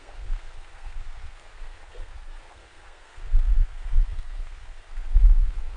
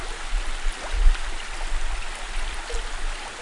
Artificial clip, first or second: first